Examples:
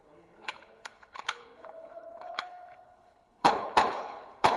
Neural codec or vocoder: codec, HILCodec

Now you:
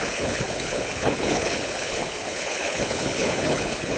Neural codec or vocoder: codec, HILCodec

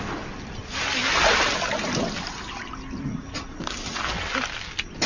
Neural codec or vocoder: none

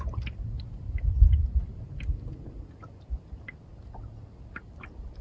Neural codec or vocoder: none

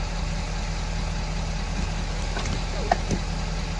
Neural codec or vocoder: none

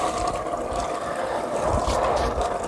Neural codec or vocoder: none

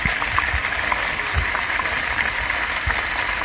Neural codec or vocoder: none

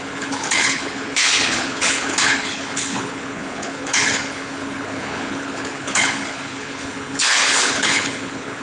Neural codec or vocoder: codec, HILCodec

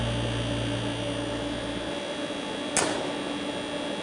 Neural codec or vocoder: none